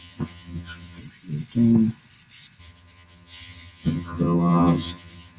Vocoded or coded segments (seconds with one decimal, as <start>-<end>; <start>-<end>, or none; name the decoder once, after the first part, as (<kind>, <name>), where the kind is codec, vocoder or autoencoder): 0.0-1.0 (vocoder, HiFi-GAN); 2.6-5.4